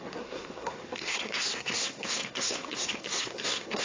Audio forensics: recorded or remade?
remade